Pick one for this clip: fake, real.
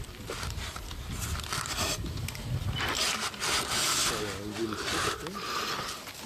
real